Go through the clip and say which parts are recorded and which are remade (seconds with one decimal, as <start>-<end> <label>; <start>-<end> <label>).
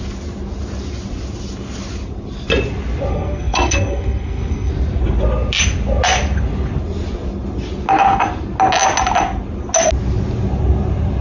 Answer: 0.0-3.1 recorded; 3.1-4.7 remade; 4.7-11.2 recorded